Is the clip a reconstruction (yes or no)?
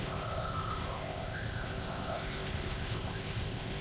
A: yes